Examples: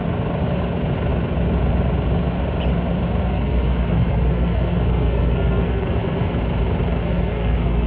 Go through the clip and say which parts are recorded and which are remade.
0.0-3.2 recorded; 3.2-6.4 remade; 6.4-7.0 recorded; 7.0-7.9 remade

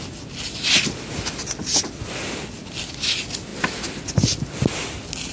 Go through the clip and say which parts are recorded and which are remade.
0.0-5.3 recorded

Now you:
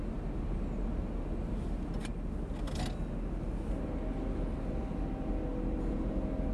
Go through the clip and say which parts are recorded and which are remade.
0.0-6.5 recorded

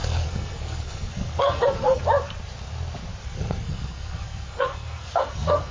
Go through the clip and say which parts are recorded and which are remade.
0.0-2.0 remade; 2.0-3.2 recorded; 3.2-5.7 remade

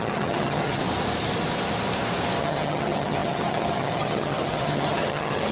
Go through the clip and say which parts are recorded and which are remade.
0.0-0.8 remade; 0.8-2.4 recorded; 2.4-5.5 remade

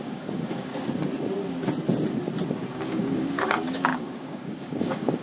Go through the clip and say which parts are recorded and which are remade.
0.0-0.7 remade; 0.7-2.7 recorded; 2.7-5.2 remade

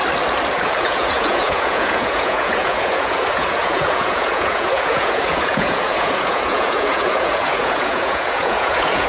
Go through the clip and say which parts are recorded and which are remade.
0.0-0.8 recorded; 0.8-9.1 remade

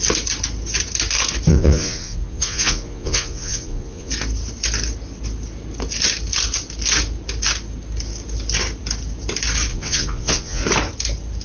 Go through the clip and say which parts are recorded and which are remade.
0.0-1.5 recorded; 1.5-4.1 remade; 4.1-9.7 recorded; 9.7-10.6 remade; 10.6-11.4 recorded